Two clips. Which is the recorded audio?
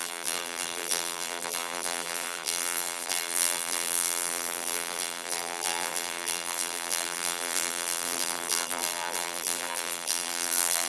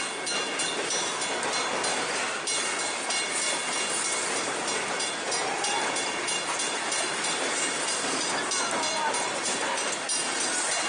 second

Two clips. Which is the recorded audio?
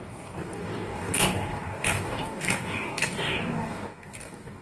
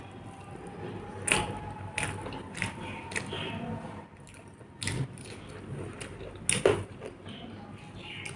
second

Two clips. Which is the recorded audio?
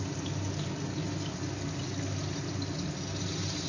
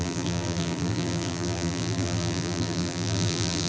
first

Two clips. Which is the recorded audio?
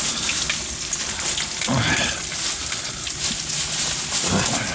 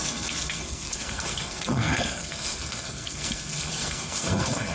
first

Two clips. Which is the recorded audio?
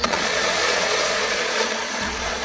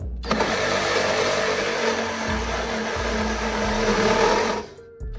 second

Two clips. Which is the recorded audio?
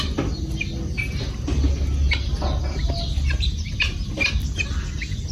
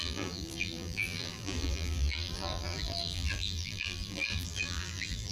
first